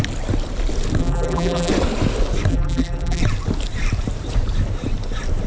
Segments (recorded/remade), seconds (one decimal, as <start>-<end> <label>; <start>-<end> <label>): 0.0-1.0 recorded; 1.0-1.7 remade; 1.7-2.5 recorded; 2.5-3.2 remade; 3.2-5.5 recorded